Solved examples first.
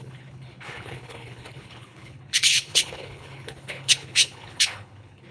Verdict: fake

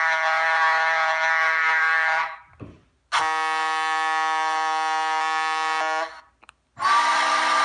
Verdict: real